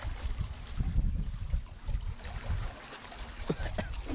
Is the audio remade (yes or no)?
yes